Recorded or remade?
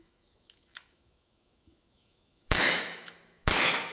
remade